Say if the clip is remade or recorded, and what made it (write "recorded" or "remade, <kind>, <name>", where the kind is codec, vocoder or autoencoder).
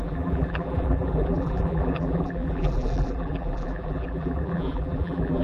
remade, vocoder, BigVGAN v2